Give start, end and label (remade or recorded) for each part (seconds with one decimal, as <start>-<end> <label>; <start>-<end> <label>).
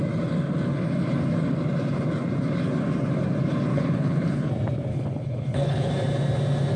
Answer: 0.0-3.7 recorded; 3.7-4.5 remade; 4.5-4.9 recorded; 4.9-5.9 remade; 5.9-6.8 recorded